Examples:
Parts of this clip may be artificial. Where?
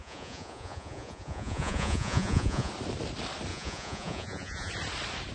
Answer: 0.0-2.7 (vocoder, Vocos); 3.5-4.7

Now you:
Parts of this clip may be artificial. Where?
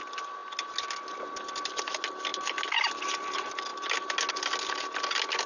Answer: none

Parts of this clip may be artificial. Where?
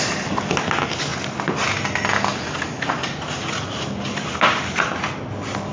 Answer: none